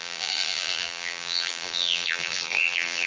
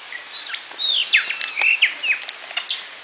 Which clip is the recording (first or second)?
second